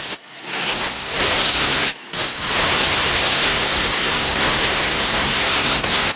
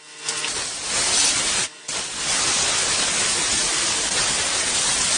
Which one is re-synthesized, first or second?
first